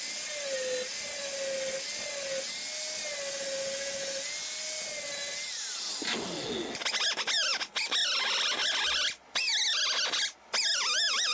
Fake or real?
real